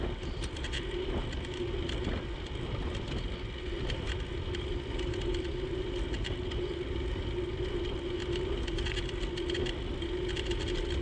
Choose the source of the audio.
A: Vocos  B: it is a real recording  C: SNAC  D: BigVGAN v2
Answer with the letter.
B